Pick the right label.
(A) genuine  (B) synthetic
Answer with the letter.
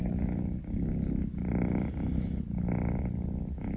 A